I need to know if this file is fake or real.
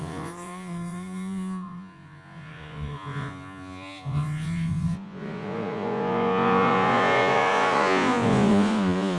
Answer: fake